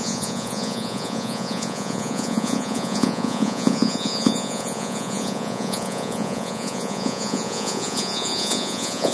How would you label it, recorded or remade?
remade